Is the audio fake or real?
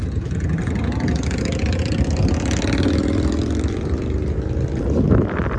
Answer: real